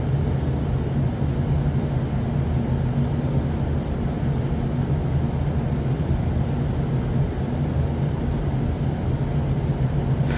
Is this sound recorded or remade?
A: recorded